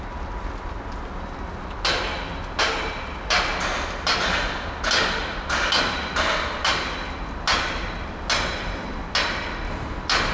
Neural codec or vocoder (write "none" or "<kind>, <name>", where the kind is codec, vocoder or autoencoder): none